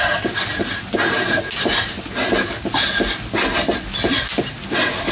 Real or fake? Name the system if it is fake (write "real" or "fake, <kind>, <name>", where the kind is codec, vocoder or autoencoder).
real